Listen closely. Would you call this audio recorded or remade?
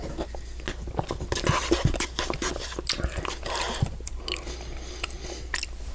recorded